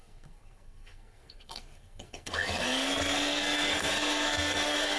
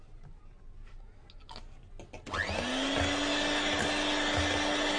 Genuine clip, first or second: second